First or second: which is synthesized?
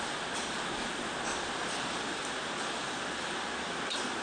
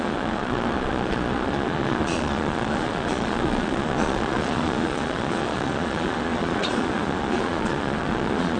second